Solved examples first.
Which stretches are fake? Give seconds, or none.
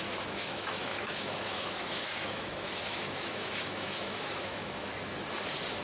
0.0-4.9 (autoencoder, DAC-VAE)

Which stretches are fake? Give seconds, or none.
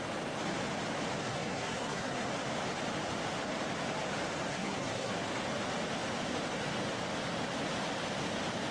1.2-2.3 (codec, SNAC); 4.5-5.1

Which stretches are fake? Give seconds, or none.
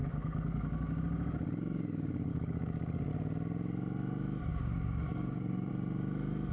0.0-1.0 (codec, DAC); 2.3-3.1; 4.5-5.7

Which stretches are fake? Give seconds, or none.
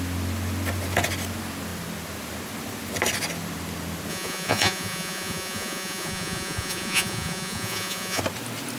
4.1-8.2 (vocoder, Vocos)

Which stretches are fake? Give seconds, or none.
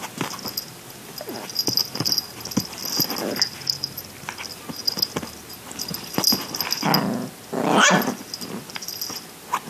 none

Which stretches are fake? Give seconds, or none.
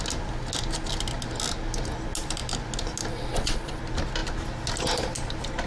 3.1-3.8 (vocoder, WaveNeXt)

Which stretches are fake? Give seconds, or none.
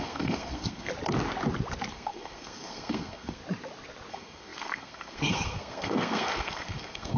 0.0-0.9 (codec, SNAC); 1.9-3.4; 4.1-7.2